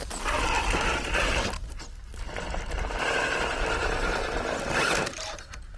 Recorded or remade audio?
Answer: recorded